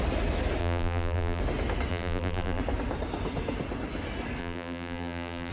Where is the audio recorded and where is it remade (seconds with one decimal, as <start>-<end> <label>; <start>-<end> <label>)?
0.0-0.6 recorded; 0.6-1.4 remade; 1.4-1.9 recorded; 1.9-2.6 remade; 2.6-4.4 recorded; 4.4-5.5 remade